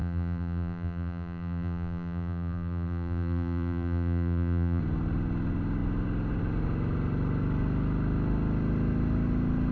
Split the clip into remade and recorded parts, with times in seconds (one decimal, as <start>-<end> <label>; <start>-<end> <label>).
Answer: 0.0-4.8 remade; 4.8-9.7 recorded